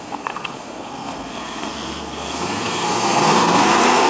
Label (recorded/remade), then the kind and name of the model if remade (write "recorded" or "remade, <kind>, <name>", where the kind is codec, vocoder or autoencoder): remade, codec, SNAC